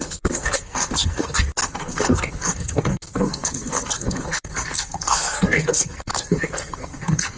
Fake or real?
fake